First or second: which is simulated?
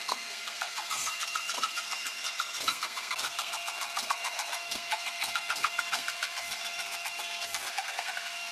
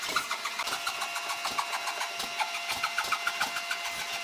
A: first